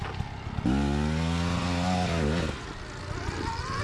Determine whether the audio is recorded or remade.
recorded